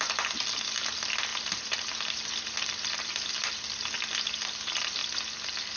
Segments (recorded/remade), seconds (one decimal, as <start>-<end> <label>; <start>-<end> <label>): 0.0-5.8 recorded